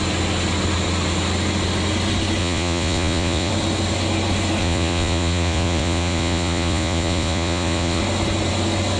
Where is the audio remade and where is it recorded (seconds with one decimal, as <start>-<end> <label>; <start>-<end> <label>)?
0.0-2.4 recorded; 2.4-3.5 remade; 3.5-4.6 recorded; 4.6-8.0 remade; 8.0-9.0 recorded